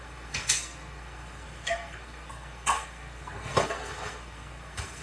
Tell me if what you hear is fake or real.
fake